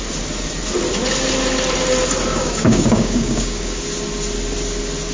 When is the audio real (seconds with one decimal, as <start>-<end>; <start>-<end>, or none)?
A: 0.0-2.3; 3.8-5.1